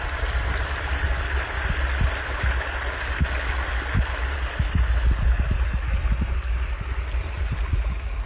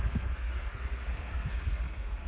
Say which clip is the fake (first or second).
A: second